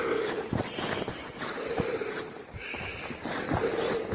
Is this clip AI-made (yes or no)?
no